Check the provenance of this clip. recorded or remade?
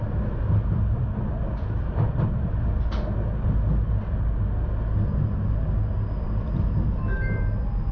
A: recorded